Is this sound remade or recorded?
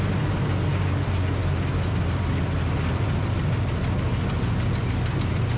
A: recorded